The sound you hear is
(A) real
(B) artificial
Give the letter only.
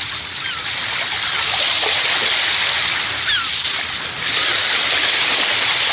A